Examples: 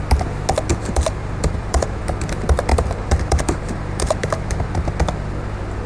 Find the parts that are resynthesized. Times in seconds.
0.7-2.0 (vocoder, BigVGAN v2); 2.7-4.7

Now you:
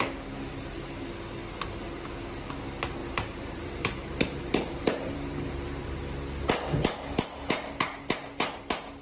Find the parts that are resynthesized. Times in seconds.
3.0-6.0 (vocoder, BigVGAN v2)

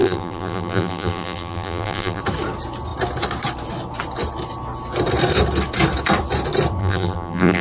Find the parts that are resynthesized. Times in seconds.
0.0-2.2 (vocoder, BigVGAN v2); 6.8-7.6

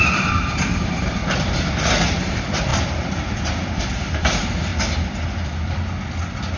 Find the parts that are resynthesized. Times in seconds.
0.0-1.2 (vocoder, BigVGAN v2); 2.2-4.7

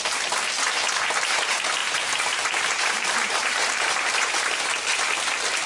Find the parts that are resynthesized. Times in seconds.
1.8-4.3 (vocoder, BigVGAN v2)